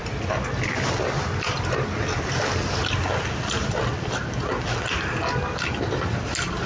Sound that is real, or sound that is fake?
real